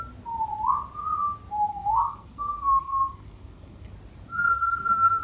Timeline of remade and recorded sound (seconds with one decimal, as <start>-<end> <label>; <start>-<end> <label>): 0.0-1.7 recorded; 1.7-3.9 remade; 3.9-4.3 recorded; 4.3-5.2 remade